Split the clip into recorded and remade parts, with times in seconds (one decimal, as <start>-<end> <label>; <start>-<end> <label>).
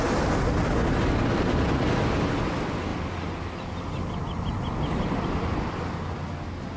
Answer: 0.0-6.8 recorded